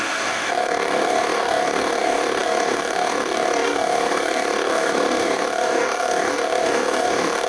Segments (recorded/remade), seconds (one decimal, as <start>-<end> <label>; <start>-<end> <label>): 0.0-7.5 remade